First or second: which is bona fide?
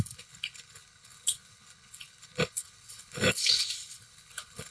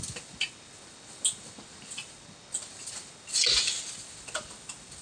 second